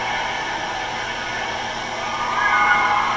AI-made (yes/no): no